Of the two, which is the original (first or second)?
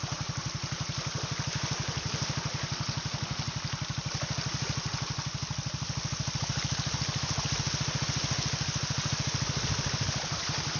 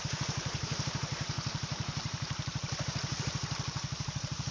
first